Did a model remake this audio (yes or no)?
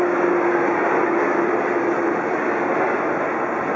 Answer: no